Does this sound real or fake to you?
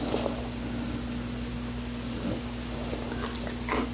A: real